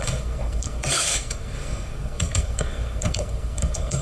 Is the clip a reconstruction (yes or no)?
yes